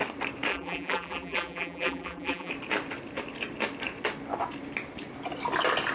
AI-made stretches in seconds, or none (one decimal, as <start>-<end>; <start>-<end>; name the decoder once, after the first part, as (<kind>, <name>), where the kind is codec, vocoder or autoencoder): 0.5-2.5 (vocoder, BigVGAN v2)

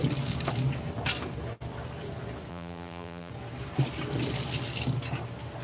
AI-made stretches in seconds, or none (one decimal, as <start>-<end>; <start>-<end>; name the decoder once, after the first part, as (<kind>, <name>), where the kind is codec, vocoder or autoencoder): 2.5-3.3 (vocoder, BigVGAN v2)